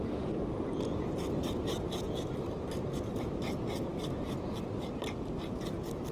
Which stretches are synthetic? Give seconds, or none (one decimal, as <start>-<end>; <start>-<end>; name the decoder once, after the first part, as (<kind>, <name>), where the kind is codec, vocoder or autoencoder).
none